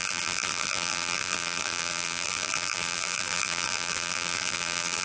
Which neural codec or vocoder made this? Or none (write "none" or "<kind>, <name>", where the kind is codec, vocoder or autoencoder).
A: vocoder, BigVGAN v2